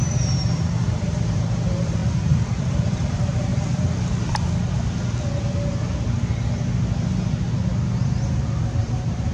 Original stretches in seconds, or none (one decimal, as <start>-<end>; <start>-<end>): 3.5-8.6